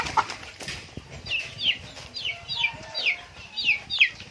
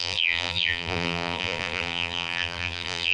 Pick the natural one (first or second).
first